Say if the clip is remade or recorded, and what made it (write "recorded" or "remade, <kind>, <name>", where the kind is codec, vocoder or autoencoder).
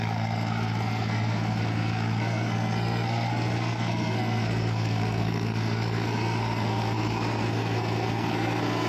remade, codec, SNAC